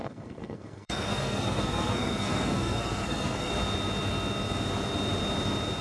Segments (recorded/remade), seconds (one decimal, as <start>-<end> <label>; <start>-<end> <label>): 0.0-3.5 remade; 3.5-5.8 recorded